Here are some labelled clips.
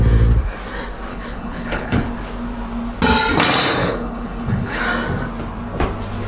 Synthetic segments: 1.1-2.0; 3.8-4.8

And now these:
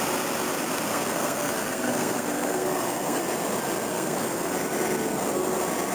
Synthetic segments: 0.9-3.2; 3.9-4.5

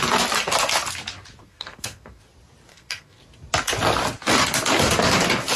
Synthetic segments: 1.4-2.2; 2.7-3.2

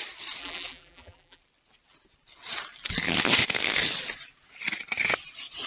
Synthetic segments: 0.4-1.4

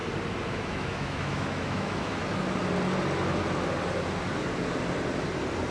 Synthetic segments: 0.5-2.2

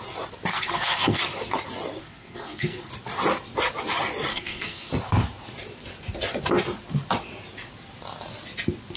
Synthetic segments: 0.5-1.2; 2.0-2.9; 4.3-4.9

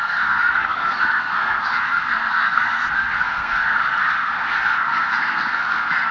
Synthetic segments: 0.0-6.1